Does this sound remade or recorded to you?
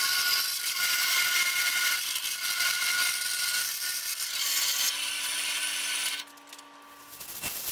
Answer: recorded